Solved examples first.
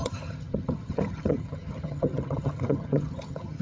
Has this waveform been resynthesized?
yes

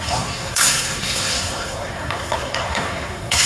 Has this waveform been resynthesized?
yes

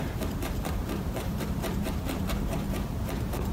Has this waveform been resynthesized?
yes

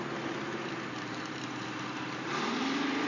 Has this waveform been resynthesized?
yes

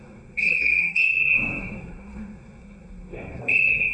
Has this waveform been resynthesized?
yes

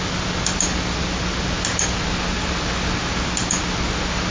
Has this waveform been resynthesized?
no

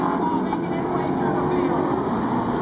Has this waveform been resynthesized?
no